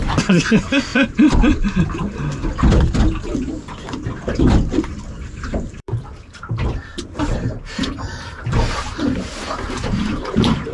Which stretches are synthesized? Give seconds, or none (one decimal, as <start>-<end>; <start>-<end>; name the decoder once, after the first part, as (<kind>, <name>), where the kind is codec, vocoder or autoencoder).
0.0-0.9 (vocoder, BigVGAN v2); 4.9-10.7